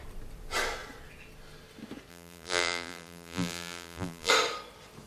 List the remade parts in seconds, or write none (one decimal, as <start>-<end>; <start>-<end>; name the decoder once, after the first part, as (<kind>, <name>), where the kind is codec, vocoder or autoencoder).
2.1-4.3 (vocoder, BigVGAN v2)